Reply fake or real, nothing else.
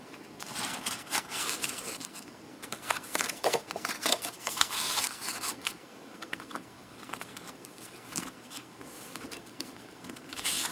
fake